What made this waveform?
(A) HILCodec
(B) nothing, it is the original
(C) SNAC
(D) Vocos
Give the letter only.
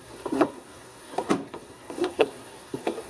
C